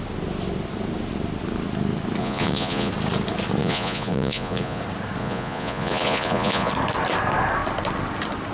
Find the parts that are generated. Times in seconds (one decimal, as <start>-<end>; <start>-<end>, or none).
2.2-2.9; 3.6-4.8; 5.2-6.7